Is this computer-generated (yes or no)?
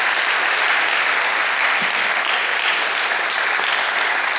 no